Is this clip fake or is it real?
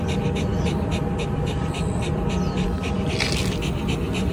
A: real